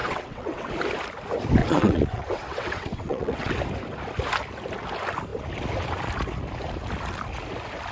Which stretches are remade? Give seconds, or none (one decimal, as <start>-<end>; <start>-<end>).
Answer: 0.0-0.7; 1.6-3.5